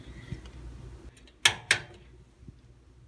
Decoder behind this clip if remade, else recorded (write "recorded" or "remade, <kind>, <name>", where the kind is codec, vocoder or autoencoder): recorded